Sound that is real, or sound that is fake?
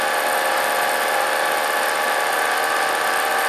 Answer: real